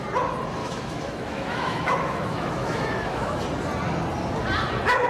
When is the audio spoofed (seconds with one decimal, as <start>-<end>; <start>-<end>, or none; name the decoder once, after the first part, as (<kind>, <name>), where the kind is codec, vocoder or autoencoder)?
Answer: 0.6-3.4 (autoencoder, DAC-VAE)